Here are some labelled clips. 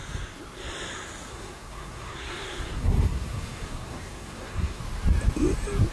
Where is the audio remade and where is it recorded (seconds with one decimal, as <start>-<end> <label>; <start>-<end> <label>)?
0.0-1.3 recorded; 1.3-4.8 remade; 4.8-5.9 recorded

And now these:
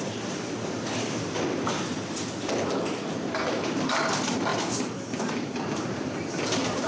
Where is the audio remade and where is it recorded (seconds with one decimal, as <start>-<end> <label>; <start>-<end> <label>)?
0.0-6.9 recorded

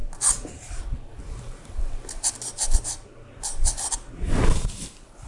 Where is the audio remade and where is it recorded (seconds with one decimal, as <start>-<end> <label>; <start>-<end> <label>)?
0.0-5.3 recorded

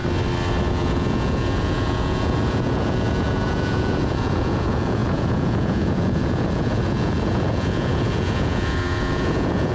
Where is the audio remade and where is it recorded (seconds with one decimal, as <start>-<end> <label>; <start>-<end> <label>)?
0.0-0.7 recorded; 0.7-9.7 remade

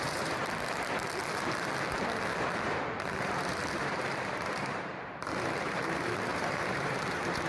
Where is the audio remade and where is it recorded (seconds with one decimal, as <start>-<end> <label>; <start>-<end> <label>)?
0.0-0.4 remade; 0.4-3.2 recorded; 3.2-7.5 remade

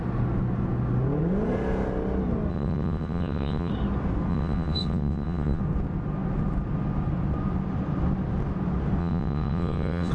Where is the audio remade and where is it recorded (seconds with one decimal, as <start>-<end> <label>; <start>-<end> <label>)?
0.0-2.5 recorded; 2.5-3.7 remade; 3.7-4.3 recorded; 4.3-5.6 remade; 5.6-9.0 recorded; 9.0-10.1 remade